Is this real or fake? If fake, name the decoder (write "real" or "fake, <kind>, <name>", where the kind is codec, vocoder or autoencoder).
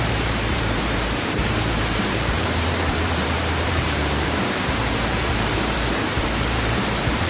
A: fake, vocoder, BigVGAN v2